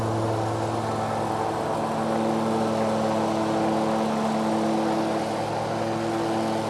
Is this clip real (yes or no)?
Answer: yes